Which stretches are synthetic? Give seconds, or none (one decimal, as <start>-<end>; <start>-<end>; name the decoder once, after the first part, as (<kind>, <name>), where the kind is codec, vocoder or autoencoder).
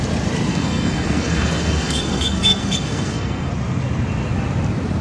0.5-3.5 (codec, SNAC)